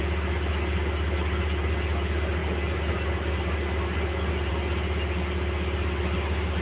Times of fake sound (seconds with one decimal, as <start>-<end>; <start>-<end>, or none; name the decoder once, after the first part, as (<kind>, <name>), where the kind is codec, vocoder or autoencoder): none